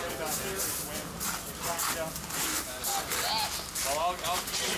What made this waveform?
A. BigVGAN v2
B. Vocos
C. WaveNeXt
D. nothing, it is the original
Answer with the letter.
D